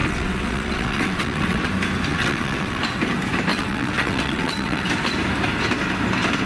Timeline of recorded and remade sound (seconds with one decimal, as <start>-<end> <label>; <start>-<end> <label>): 0.0-1.7 remade; 1.7-2.1 recorded; 2.1-2.8 remade; 2.8-3.5 recorded; 3.5-4.9 remade; 4.9-6.5 recorded